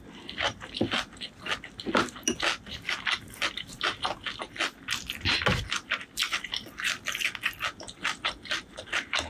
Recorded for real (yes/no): yes